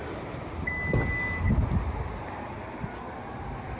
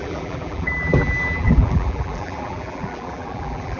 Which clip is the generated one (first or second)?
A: second